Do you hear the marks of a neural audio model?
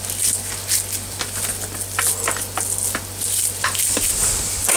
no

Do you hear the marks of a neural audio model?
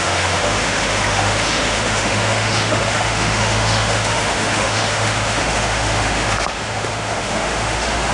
yes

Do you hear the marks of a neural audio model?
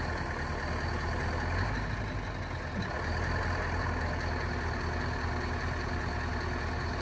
no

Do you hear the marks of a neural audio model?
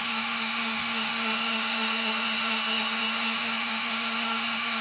yes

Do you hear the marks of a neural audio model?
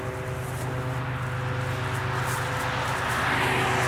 no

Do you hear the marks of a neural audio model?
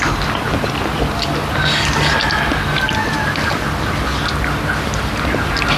no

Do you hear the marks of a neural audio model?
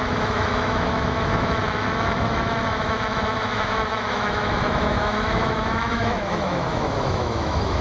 yes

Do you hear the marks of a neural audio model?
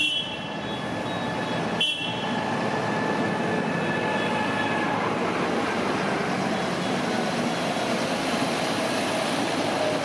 no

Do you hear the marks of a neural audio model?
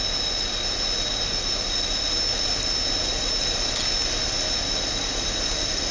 no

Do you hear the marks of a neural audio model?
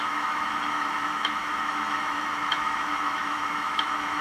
yes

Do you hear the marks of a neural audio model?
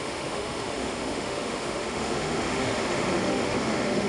yes